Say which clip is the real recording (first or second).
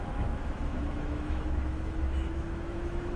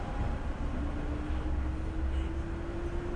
second